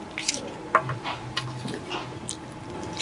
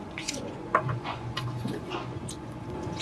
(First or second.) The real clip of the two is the first